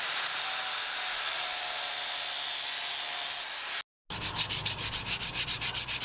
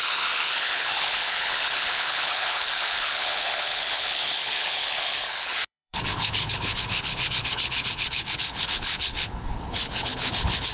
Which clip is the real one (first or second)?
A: first